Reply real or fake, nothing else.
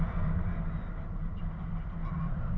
real